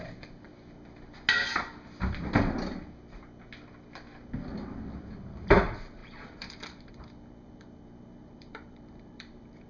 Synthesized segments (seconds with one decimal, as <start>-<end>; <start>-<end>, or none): 0.0-0.5; 5.1-9.7